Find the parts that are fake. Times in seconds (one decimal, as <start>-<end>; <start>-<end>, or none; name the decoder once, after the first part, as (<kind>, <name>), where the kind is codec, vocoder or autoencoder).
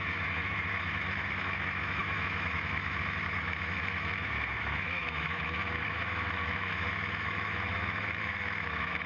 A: 0.0-9.1 (autoencoder, DAC-VAE)